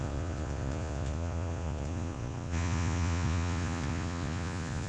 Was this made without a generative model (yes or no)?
no